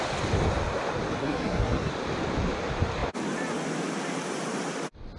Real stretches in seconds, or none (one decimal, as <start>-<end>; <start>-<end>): 0.0-1.2; 1.9-5.2